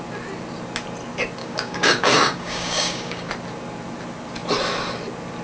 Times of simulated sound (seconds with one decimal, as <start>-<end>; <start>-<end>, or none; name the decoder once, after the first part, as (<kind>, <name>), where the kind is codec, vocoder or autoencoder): 1.4-3.3 (codec, DAC)